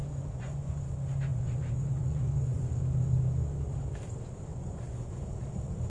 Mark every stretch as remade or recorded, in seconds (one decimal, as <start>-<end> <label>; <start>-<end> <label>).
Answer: 0.0-0.8 remade; 0.8-1.3 recorded; 1.3-2.8 remade; 2.8-4.5 recorded; 4.5-5.2 remade; 5.2-5.9 recorded